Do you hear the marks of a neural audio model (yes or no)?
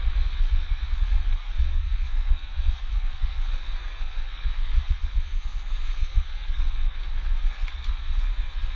yes